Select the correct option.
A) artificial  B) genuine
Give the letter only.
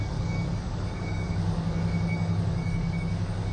A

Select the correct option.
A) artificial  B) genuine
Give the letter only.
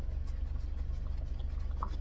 B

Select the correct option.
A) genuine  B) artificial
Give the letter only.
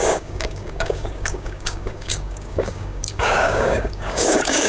B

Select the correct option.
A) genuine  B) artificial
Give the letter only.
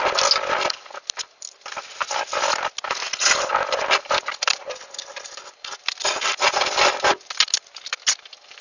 A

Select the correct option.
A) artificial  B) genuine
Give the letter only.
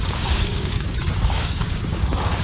A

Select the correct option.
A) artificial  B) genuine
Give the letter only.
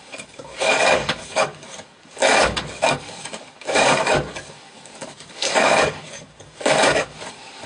A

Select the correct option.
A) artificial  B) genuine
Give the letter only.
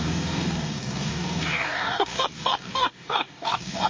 A